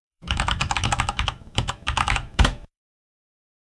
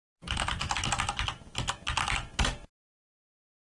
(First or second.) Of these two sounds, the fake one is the first